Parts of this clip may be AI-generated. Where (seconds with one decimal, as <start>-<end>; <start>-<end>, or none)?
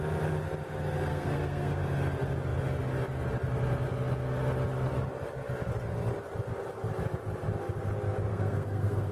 1.1-1.8; 8.3-9.1